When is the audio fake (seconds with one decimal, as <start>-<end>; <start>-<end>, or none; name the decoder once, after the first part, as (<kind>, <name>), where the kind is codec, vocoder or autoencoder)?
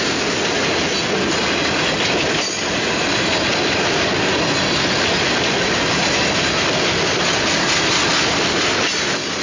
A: none